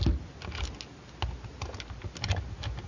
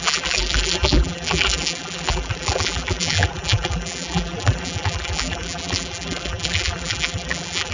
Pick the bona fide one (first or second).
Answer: first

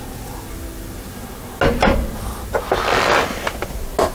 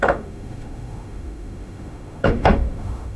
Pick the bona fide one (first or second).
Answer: first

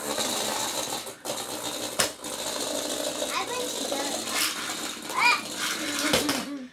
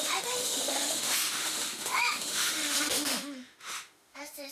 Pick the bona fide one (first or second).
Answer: first